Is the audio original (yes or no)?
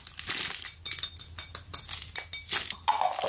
yes